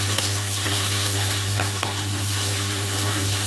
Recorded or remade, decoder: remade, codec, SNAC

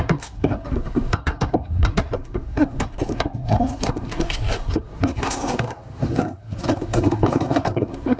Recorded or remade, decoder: remade, codec, SNAC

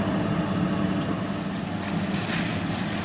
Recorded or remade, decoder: recorded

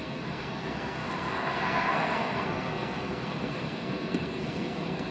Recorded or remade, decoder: remade, codec, SNAC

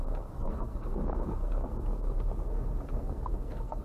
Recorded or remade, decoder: remade, codec, SNAC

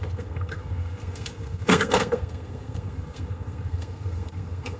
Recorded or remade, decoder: remade, codec, SNAC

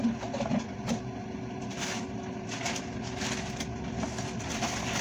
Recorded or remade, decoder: recorded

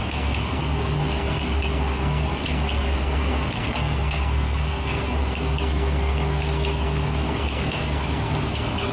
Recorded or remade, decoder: remade, codec, SNAC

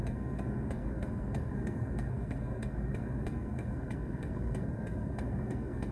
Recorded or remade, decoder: remade, codec, SNAC